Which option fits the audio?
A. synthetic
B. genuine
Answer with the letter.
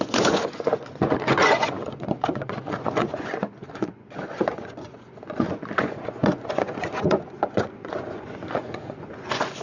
A